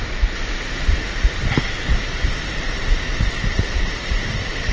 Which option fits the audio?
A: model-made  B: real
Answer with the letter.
B